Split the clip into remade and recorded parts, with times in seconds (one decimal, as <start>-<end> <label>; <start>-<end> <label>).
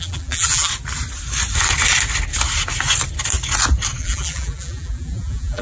0.0-0.7 remade; 0.7-4.0 recorded; 4.0-5.6 remade